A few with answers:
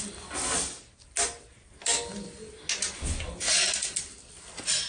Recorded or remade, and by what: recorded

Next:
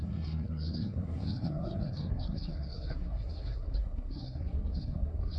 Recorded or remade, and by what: remade, codec, SNAC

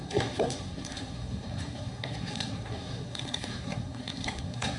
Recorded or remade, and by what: remade, codec, SNAC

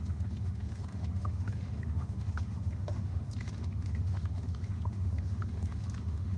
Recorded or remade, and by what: remade, autoencoder, DAC-VAE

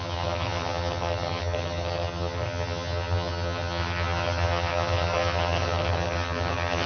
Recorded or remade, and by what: remade, vocoder, HiFi-GAN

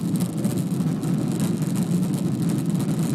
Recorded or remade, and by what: recorded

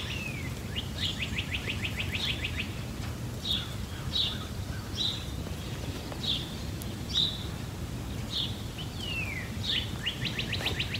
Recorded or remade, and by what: recorded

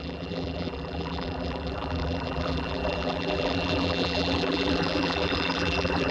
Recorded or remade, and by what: remade, vocoder, BigVGAN v2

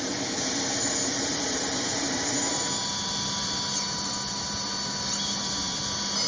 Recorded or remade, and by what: recorded